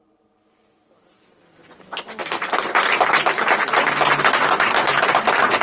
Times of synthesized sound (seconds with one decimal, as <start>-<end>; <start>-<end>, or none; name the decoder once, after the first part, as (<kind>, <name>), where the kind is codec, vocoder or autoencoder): none